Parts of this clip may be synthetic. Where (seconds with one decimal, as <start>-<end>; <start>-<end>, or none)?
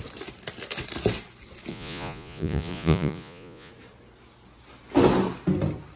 1.7-3.7